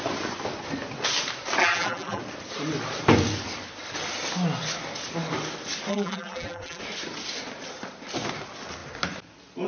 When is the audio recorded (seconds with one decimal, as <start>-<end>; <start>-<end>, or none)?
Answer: 0.0-1.6; 2.2-5.9; 6.8-9.7